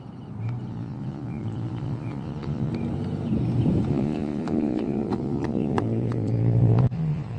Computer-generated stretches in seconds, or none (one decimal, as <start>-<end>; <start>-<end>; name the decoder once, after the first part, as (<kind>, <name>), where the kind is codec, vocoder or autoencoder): 0.7-2.7 (vocoder, Vocos); 3.9-7.4